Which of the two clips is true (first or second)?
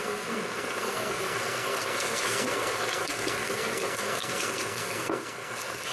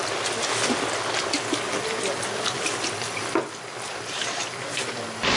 second